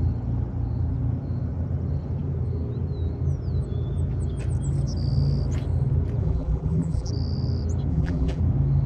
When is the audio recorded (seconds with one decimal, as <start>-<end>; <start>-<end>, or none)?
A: 0.0-6.2; 7.1-7.9; 8.4-8.9

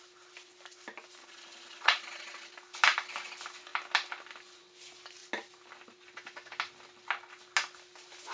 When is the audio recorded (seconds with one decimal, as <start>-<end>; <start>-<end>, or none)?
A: 0.0-1.2; 2.5-8.3

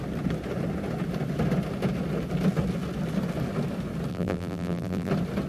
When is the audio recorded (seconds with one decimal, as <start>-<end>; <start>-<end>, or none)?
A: 0.0-4.1; 5.1-5.5

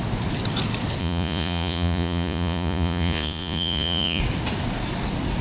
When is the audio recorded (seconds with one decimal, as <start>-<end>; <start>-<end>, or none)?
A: 0.0-1.0; 4.2-5.4

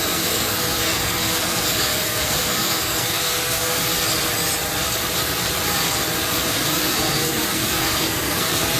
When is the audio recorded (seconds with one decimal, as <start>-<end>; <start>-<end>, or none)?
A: 3.8-6.5

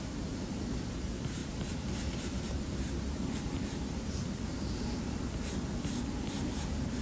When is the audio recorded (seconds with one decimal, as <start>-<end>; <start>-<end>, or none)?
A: 4.5-6.2